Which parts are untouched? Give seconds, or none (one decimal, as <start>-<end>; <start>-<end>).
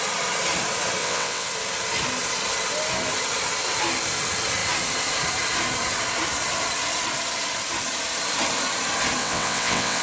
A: 0.0-1.0; 1.5-9.2